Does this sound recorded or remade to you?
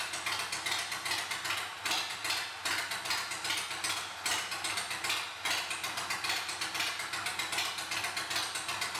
recorded